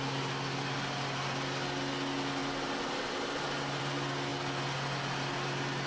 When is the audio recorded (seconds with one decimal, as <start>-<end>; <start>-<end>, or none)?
0.0-5.9